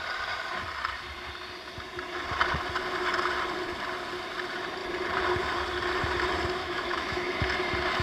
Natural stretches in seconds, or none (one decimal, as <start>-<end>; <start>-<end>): 0.0-6.6; 7.4-8.0